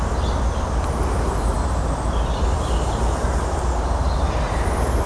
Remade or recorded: recorded